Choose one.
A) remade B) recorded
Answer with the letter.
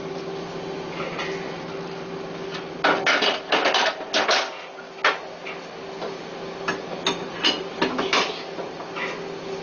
B